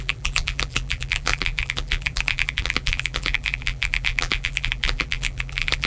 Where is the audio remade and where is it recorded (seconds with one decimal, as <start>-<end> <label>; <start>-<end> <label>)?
0.0-5.9 remade